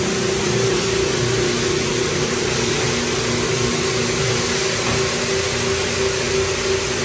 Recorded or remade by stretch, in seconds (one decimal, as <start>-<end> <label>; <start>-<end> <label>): 0.0-1.9 recorded; 1.9-2.7 remade; 2.7-7.0 recorded

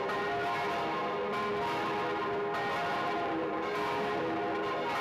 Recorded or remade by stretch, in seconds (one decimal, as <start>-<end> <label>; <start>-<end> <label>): 0.0-2.9 recorded; 2.9-4.2 remade; 4.2-5.0 recorded